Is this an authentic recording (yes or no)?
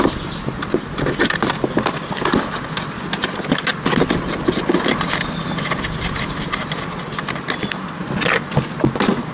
yes